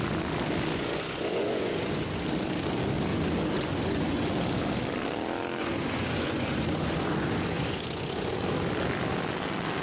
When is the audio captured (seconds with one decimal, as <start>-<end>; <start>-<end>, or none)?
0.0-0.7; 2.2-3.1; 4.3-5.6; 8.3-9.8